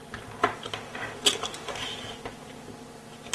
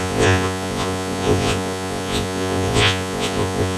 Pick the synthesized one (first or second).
second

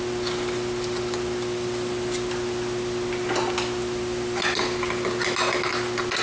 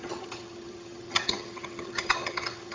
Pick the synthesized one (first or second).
second